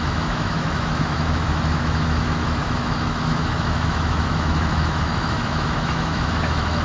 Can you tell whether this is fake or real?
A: fake